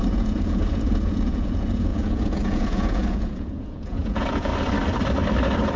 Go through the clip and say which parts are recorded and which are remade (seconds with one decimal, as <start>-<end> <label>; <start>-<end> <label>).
0.0-4.5 remade; 4.5-5.8 recorded